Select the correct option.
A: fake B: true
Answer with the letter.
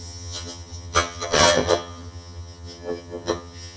A